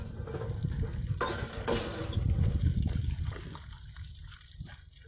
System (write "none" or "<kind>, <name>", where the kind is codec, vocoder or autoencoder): none